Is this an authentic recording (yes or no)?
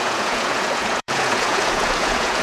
no